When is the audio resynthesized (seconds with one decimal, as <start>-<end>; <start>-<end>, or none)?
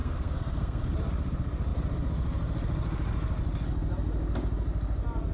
0.0-0.8